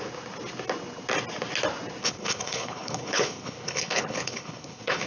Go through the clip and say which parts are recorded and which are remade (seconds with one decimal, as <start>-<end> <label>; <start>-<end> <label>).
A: 0.0-2.0 recorded; 2.0-5.1 remade